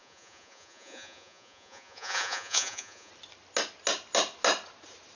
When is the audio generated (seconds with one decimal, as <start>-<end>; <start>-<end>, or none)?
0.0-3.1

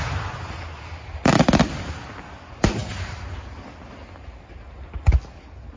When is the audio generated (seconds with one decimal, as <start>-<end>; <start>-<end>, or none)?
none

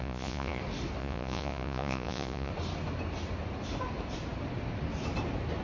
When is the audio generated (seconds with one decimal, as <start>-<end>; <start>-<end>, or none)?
0.0-0.6; 1.0-2.5